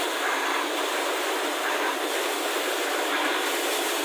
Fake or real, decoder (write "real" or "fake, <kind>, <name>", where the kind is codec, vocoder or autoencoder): real